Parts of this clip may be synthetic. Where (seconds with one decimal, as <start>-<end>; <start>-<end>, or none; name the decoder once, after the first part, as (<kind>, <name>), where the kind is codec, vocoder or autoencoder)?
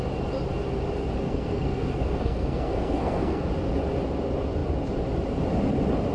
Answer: 1.2-3.4 (codec, SNAC)